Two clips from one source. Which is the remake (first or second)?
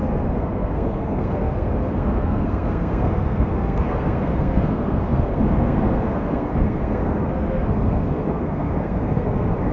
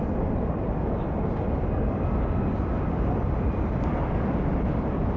first